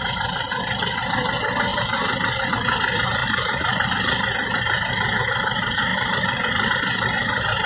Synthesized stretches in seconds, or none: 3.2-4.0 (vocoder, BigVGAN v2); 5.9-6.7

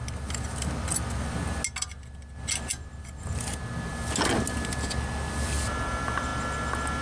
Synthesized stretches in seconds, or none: none

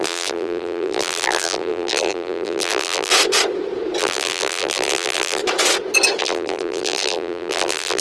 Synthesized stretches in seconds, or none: 0.0-3.1 (vocoder, BigVGAN v2); 4.0-5.4; 6.2-8.0

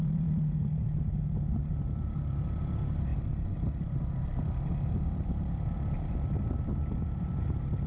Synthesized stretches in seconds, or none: 0.0-7.9 (vocoder, BigVGAN v2)

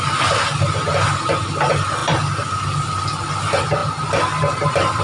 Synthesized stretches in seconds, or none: 0.0-5.0 (vocoder, BigVGAN v2)

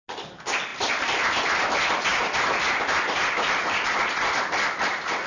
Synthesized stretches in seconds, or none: 0.7-1.4 (vocoder, BigVGAN v2); 2.1-5.3